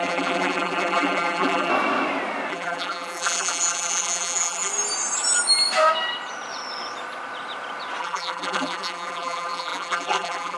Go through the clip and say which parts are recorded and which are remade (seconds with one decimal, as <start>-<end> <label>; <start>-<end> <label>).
0.0-1.7 remade; 1.7-2.5 recorded; 2.5-4.7 remade; 4.7-8.0 recorded; 8.0-10.6 remade